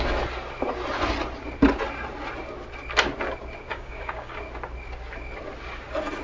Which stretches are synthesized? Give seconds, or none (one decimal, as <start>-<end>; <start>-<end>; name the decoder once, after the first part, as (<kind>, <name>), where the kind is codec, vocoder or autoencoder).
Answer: 3.7-4.3 (codec, DAC)